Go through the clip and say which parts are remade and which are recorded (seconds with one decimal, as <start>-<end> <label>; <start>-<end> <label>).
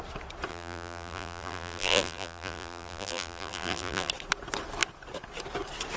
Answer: 0.0-0.5 recorded; 0.5-4.1 remade; 4.1-6.0 recorded